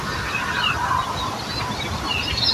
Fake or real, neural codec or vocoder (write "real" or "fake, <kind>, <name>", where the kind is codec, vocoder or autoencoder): real